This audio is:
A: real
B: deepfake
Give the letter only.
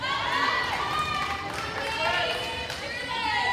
A